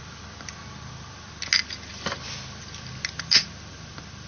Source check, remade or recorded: recorded